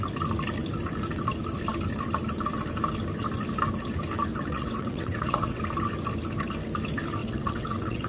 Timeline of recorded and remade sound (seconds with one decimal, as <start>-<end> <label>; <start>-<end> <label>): 0.0-4.3 recorded; 4.3-5.6 remade; 5.6-7.2 recorded; 7.2-8.1 remade